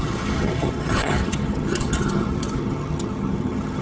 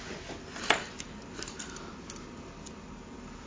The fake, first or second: first